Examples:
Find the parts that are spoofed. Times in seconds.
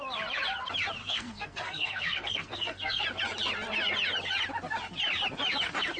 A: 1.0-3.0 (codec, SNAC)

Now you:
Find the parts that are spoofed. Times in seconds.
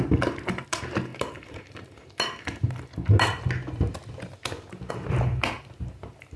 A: none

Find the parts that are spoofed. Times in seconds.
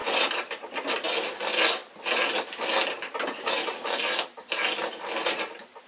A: none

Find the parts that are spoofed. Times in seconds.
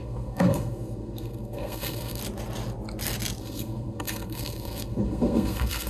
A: 0.0-2.2 (codec, SNAC); 3.4-5.9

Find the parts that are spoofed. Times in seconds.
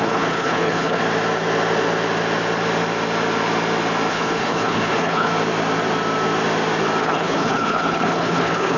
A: 0.0-1.0 (codec, HILCodec); 4.1-5.3; 7.0-8.8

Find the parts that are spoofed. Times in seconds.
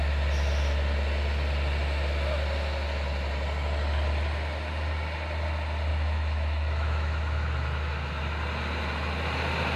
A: 5.9-8.1 (autoencoder, DAC-VAE)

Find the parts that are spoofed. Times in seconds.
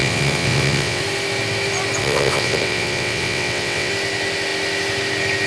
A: 0.0-1.0 (vocoder, WaveNeXt); 2.0-3.9